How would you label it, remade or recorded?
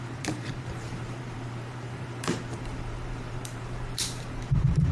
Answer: remade